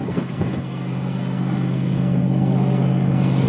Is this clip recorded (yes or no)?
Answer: no